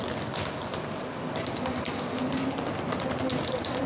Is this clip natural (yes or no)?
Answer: yes